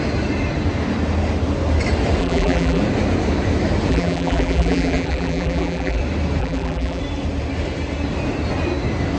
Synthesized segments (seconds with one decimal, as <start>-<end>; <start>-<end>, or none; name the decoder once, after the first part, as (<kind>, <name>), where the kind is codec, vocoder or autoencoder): 2.2-2.8 (vocoder, BigVGAN v2); 3.9-6.0; 6.4-7.0